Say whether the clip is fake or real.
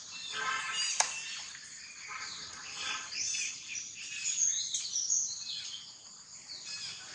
real